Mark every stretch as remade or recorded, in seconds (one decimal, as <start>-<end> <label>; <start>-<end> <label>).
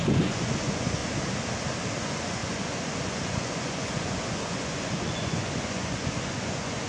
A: 0.0-1.0 remade; 1.0-2.0 recorded; 2.0-6.9 remade